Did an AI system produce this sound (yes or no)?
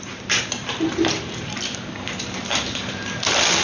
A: yes